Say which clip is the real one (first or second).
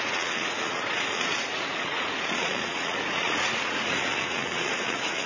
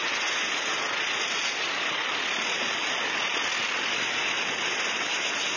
second